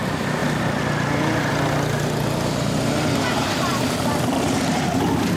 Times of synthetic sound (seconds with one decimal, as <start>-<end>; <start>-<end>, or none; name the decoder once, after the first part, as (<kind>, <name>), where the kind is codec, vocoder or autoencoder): none